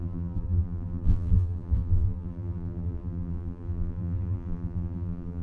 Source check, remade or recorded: remade